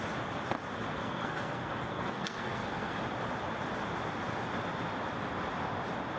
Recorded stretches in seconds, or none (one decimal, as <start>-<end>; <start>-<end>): 0.0-0.9; 3.0-6.2